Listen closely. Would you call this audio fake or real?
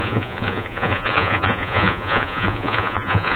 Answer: fake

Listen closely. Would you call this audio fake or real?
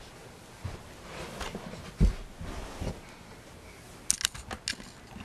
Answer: real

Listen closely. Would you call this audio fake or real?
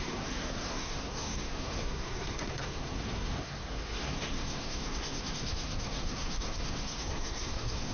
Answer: fake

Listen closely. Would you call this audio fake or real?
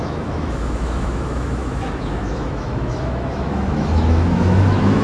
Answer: fake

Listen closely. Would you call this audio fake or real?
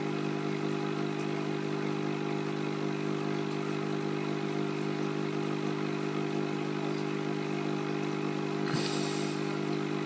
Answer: real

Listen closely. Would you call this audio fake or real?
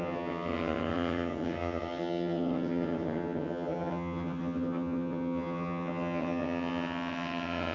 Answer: fake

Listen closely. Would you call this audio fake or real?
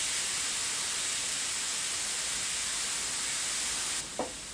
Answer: real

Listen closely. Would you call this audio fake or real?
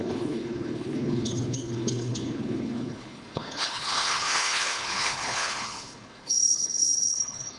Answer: fake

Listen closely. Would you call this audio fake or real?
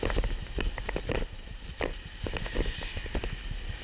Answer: real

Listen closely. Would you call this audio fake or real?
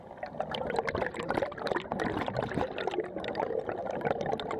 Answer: real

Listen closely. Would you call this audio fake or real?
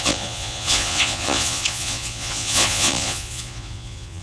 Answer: fake